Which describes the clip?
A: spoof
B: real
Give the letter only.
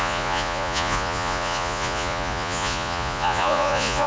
A